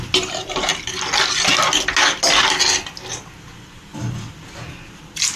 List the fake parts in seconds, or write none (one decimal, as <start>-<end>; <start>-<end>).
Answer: none

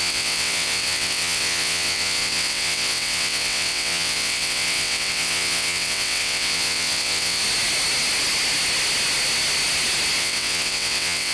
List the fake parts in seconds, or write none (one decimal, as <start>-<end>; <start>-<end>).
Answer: 0.0-7.4; 10.2-11.3